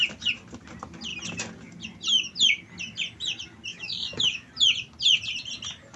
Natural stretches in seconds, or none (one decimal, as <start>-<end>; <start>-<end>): 0.0-3.7; 4.5-6.0